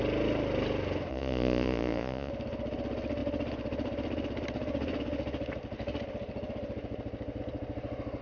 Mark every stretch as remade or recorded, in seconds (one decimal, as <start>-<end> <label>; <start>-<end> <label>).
0.0-1.1 recorded; 1.1-2.3 remade; 2.3-8.2 recorded